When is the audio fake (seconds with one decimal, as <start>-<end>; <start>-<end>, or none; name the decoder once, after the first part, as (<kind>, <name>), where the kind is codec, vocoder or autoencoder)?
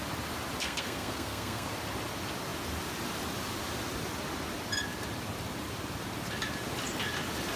0.6-1.7 (codec, SNAC)